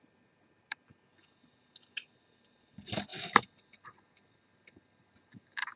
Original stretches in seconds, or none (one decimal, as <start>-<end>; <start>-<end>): 0.0-5.8